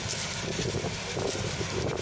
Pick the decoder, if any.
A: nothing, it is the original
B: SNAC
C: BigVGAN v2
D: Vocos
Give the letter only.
C